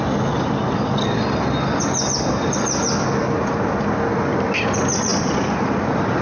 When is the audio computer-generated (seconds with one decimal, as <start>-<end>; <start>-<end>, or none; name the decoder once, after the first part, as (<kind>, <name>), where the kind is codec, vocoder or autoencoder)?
none